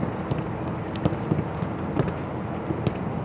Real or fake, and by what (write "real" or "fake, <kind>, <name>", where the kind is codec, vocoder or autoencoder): real